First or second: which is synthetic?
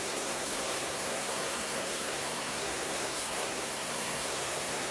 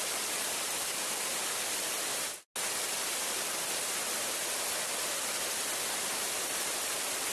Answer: first